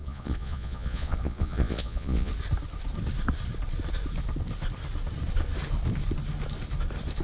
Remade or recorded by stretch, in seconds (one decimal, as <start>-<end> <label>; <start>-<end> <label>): 0.0-2.3 remade; 2.3-7.2 recorded